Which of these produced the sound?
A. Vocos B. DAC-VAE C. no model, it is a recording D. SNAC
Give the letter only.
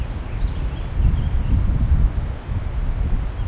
C